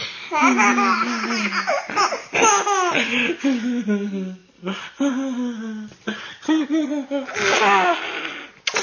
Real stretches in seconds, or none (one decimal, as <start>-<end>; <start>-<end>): 0.0-6.3; 6.9-8.8